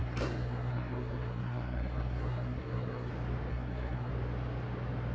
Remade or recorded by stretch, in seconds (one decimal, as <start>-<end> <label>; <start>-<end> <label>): 0.0-3.1 remade; 3.1-3.5 recorded; 3.5-4.1 remade; 4.1-5.1 recorded